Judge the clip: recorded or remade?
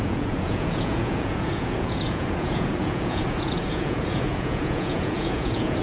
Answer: remade